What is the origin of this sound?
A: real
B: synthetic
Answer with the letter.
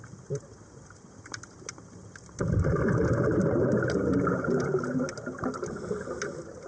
A